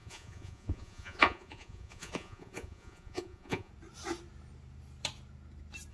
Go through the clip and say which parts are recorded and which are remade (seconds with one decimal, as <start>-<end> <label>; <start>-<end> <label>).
0.0-3.7 remade; 3.7-5.9 recorded